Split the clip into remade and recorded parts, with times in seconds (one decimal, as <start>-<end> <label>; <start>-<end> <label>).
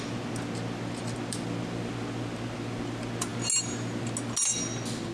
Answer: 0.0-5.1 recorded